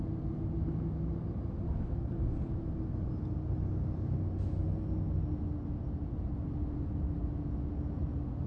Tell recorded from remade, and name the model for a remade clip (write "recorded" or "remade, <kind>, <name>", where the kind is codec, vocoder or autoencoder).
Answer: recorded